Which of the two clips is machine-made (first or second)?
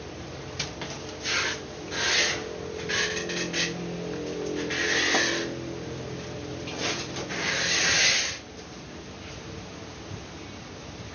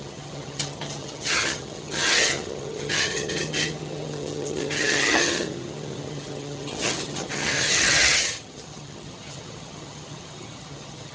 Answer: second